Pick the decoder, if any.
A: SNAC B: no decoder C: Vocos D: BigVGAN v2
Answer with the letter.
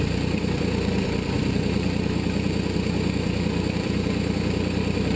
D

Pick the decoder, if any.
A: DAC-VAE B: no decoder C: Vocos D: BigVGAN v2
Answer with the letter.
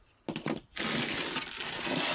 B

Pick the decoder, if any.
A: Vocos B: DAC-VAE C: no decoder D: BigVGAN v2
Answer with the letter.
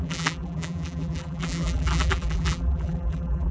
D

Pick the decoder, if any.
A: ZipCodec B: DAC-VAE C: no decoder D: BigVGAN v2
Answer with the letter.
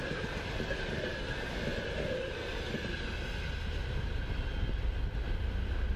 C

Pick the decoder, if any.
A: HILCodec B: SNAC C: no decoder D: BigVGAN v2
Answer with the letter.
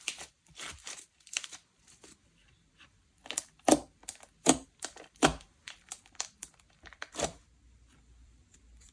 D